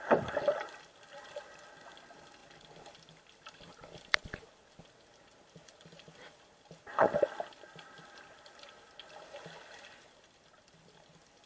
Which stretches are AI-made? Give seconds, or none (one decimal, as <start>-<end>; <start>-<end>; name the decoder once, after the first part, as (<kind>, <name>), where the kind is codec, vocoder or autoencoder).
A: none